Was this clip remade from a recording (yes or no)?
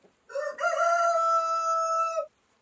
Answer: no